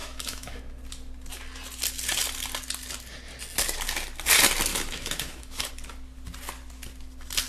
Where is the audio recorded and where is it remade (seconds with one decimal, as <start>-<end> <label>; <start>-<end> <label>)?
0.0-0.6 remade; 0.6-4.7 recorded; 4.7-5.7 remade; 5.7-7.5 recorded